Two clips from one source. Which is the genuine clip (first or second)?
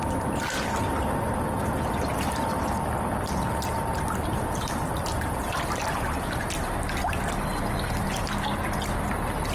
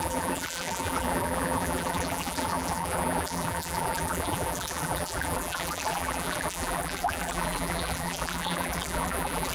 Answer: first